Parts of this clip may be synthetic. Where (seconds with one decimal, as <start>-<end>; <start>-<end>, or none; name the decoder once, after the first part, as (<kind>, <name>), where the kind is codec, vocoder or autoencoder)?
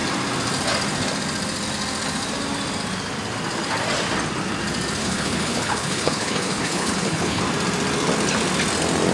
5.0-7.4 (codec, HILCodec)